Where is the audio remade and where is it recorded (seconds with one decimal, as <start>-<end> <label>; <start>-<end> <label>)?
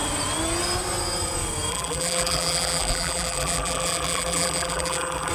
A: 0.0-1.7 recorded; 1.7-5.3 remade